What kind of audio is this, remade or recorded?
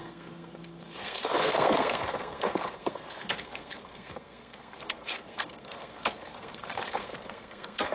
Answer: remade